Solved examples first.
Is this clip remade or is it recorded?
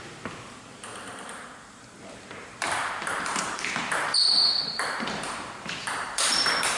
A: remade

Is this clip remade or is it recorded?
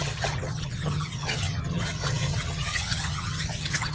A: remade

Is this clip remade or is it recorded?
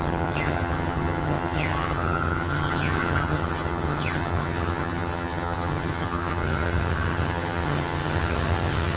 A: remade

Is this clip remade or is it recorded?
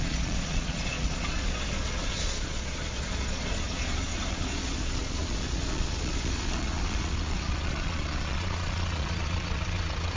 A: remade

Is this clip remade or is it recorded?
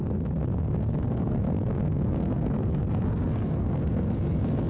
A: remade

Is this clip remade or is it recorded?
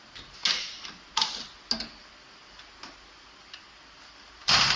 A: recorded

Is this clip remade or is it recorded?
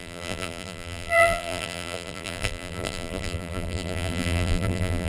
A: remade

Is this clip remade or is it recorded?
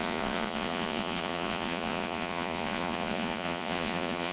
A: remade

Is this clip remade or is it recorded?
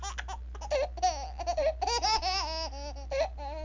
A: recorded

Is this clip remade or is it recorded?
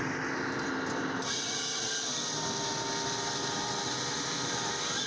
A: recorded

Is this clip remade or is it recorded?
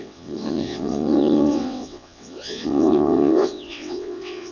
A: remade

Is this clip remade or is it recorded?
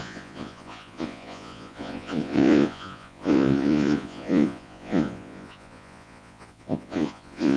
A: remade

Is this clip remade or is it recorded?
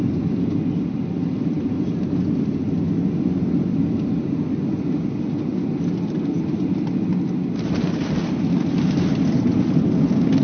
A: recorded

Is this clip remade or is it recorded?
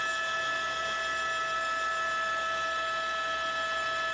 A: recorded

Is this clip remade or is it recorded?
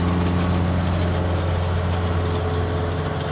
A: recorded